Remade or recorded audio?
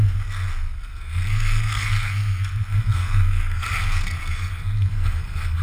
remade